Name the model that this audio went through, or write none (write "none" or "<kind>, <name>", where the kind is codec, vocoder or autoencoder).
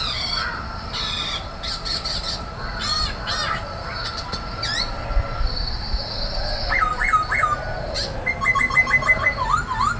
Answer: none